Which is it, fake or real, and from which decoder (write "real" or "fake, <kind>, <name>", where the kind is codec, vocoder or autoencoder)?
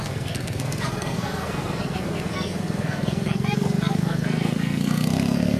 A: fake, codec, SNAC